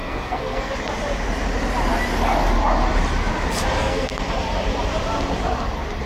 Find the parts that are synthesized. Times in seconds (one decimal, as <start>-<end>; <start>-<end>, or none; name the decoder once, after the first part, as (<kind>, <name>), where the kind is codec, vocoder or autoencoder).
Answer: 0.0-0.7 (codec, SNAC); 3.8-4.3